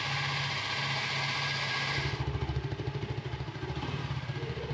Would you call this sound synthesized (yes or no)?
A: no